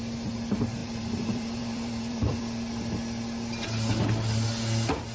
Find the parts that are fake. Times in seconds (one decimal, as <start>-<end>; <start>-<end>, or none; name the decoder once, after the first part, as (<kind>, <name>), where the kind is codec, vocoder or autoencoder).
0.8-2.4 (vocoder, BigVGAN v2)